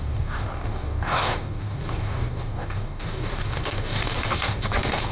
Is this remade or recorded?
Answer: remade